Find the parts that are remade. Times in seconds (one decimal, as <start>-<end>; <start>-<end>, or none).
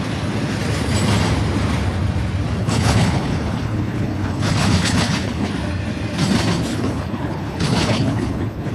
2.6-5.5; 6.7-8.7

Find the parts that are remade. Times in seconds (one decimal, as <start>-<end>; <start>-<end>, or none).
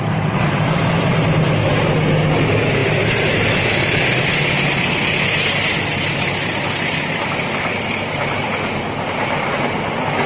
none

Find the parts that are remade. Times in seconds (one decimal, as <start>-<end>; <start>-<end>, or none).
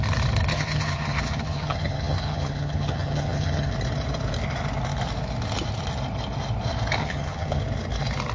0.5-3.7; 7.0-7.6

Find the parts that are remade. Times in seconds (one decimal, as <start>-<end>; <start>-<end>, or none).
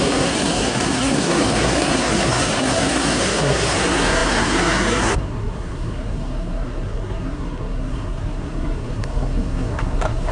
0.0-10.3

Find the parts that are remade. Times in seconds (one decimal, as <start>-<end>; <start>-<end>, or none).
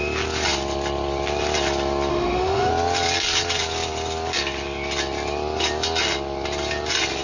2.1-2.7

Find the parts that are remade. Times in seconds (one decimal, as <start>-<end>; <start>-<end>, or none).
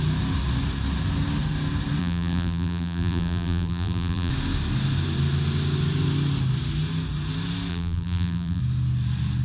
2.0-4.3; 7.7-8.6